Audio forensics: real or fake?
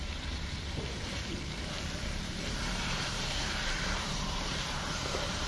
fake